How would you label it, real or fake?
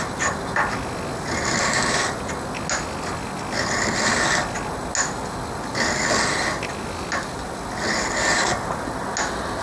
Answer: real